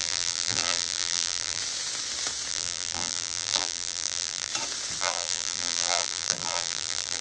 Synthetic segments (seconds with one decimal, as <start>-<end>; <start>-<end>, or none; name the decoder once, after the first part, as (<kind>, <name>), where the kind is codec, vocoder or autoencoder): 0.0-1.6 (vocoder, BigVGAN v2); 2.5-4.5; 5.0-7.2